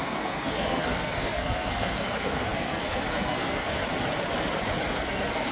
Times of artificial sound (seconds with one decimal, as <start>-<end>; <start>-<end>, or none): 0.0-3.8; 4.9-5.5